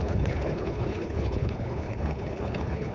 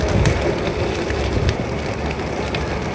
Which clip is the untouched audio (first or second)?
second